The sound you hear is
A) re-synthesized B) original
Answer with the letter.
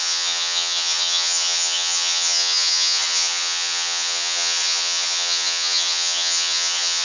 A